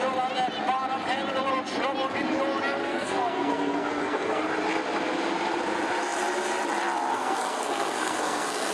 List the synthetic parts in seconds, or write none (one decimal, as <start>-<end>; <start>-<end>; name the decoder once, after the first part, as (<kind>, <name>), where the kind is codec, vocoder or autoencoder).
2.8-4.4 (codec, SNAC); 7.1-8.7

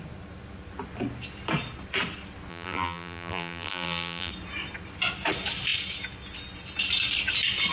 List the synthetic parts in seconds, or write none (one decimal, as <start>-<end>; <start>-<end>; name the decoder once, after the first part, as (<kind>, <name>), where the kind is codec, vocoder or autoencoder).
2.5-4.3 (vocoder, BigVGAN v2)

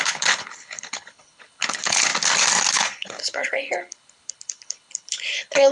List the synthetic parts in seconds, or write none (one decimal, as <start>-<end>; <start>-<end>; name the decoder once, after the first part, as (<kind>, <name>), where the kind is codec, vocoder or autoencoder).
0.0-2.1 (codec, HILCodec); 2.7-5.7

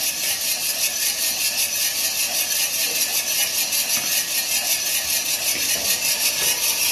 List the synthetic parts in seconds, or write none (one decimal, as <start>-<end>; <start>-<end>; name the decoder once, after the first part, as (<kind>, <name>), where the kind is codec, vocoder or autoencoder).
none

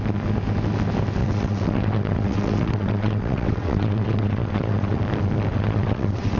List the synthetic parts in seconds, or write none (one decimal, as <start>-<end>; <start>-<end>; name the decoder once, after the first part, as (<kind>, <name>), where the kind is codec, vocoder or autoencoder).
1.2-5.0 (vocoder, WaveNeXt); 5.5-6.4